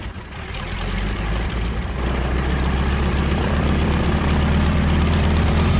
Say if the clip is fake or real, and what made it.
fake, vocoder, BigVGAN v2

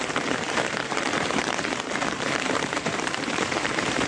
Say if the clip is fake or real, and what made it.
fake, vocoder, BigVGAN v2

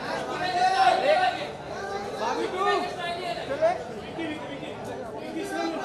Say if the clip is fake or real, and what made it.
real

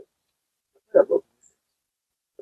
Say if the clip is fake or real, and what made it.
real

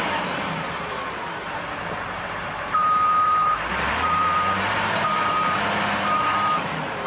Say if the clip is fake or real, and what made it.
fake, vocoder, BigVGAN v2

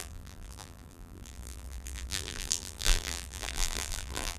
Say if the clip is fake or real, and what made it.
fake, vocoder, BigVGAN v2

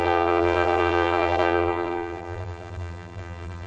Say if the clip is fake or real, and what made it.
fake, vocoder, BigVGAN v2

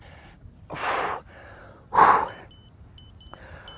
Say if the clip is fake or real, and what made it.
real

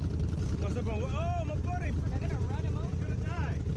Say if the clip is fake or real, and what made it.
fake, vocoder, BigVGAN v2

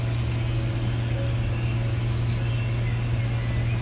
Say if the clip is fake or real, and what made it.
real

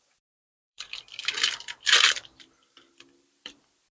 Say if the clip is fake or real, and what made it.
fake, vocoder, BigVGAN v2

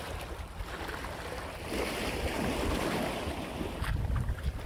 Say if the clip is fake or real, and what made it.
real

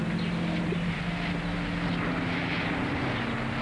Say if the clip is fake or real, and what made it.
real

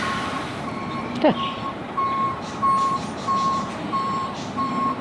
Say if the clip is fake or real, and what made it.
fake, vocoder, BigVGAN v2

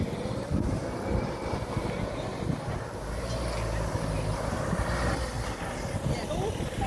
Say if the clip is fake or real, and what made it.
real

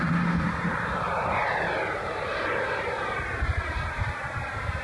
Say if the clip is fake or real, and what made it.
fake, vocoder, BigVGAN v2